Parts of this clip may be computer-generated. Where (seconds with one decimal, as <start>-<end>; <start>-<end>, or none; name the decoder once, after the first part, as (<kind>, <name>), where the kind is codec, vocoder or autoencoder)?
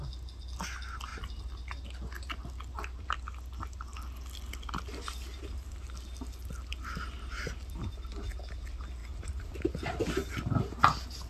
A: 9.0-9.6 (vocoder, BigVGAN v2)